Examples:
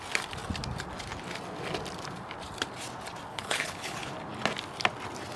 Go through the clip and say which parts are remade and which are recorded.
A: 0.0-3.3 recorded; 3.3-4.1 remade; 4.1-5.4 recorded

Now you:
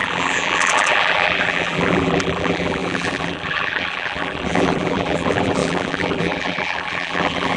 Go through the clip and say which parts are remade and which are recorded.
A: 0.0-7.6 remade

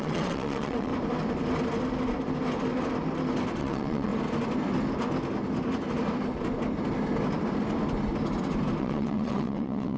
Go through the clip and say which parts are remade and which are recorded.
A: 0.0-0.9 remade; 0.9-3.6 recorded; 3.6-4.1 remade; 4.1-8.8 recorded; 8.8-10.0 remade

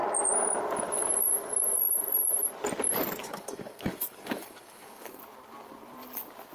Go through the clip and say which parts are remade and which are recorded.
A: 0.0-3.2 recorded; 3.2-5.2 remade; 5.2-6.5 recorded

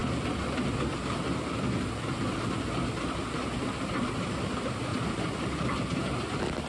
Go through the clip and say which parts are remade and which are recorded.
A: 0.0-3.0 remade; 3.0-4.9 recorded; 4.9-6.2 remade; 6.2-6.7 recorded

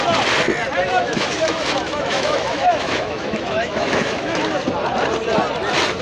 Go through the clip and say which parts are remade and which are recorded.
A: 0.0-0.9 recorded; 0.9-4.5 remade; 4.5-6.0 recorded

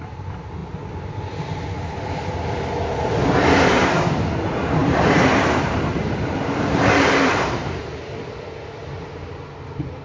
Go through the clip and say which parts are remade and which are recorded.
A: 0.0-4.8 recorded; 4.8-7.8 remade; 7.8-10.0 recorded

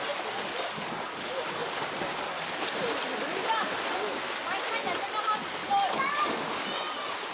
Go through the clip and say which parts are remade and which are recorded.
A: 0.0-5.6 recorded; 5.6-6.5 remade; 6.5-7.3 recorded